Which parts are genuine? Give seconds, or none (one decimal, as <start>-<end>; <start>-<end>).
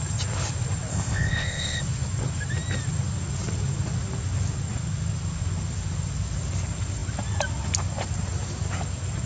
0.0-0.9; 1.8-9.3